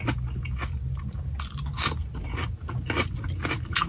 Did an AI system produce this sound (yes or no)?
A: no